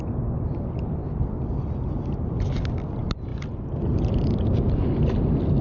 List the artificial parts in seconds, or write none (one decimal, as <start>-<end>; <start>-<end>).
none